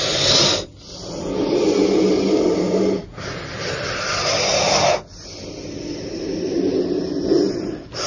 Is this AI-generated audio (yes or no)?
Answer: no